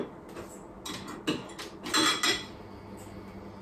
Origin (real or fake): real